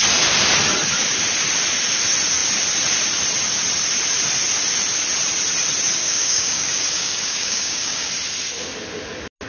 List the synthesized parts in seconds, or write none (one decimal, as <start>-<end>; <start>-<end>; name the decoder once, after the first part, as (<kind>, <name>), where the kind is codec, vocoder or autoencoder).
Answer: 6.0-8.1 (codec, DAC)